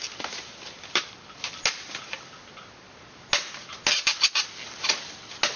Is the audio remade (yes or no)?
no